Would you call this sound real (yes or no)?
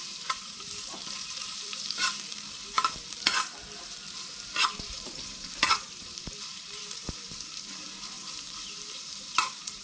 no